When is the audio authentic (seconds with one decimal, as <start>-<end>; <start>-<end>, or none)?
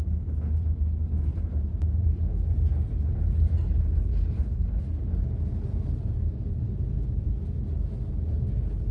0.0-8.9